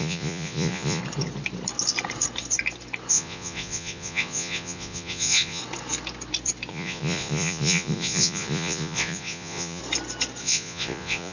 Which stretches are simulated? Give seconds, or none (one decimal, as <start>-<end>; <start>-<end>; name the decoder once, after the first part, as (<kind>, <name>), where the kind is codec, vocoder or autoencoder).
0.0-1.0 (vocoder, Vocos); 3.1-5.6; 6.7-9.8; 10.4-11.3